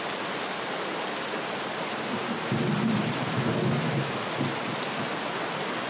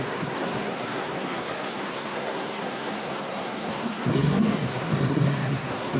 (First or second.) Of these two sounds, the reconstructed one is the second